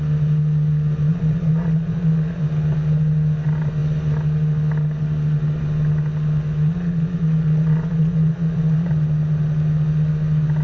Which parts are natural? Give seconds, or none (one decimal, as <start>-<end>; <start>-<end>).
0.0-1.1; 2.4-6.7; 8.9-10.6